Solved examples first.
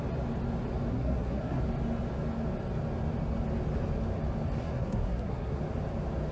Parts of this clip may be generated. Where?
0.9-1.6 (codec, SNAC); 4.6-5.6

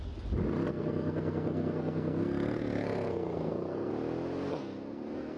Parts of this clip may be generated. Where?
0.7-3.9 (codec, SNAC); 4.5-5.4

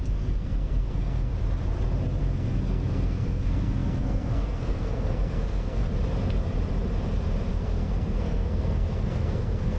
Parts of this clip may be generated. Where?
0.0-1.3 (codec, SNAC); 2.2-5.8; 7.5-9.8

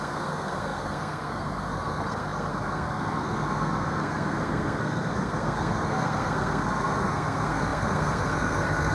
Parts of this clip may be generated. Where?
0.0-8.9 (codec, SNAC)

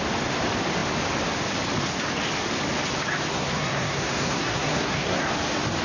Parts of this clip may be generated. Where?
3.3-5.3 (codec, SNAC)